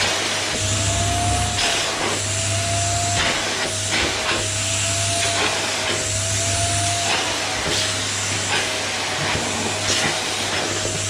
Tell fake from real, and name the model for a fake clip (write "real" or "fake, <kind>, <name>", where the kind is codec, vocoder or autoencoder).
real